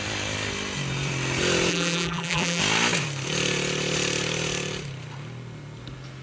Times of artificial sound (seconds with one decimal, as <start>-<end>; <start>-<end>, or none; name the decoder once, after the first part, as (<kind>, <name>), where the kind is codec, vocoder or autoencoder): 1.7-2.6 (vocoder, BigVGAN v2)